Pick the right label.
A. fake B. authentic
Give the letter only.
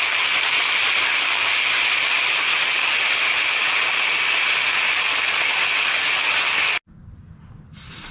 B